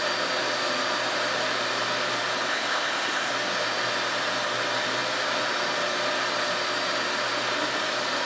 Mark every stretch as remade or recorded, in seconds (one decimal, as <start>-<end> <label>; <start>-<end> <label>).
0.0-2.5 recorded; 2.5-3.3 remade; 3.3-8.3 recorded